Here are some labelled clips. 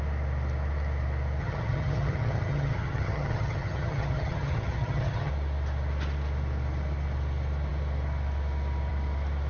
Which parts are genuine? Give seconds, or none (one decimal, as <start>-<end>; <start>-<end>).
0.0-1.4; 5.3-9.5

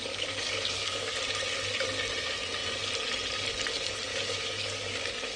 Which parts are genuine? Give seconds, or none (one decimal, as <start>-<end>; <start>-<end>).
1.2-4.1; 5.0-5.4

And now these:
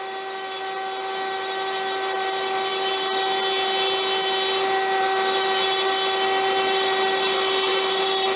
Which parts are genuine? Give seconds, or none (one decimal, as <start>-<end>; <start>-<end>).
0.0-8.4

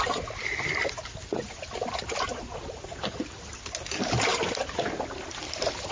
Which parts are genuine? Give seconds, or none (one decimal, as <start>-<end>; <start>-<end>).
0.0-5.9

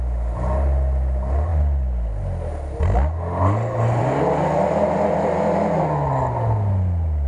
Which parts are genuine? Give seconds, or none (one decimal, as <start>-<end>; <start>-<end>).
0.0-7.3